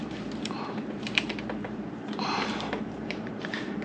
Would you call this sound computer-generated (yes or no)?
yes